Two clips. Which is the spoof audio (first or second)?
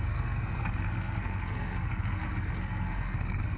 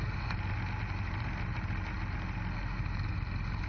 first